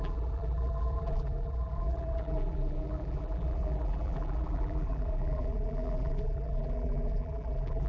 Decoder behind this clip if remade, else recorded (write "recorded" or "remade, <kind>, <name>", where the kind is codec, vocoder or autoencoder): remade, vocoder, BigVGAN v2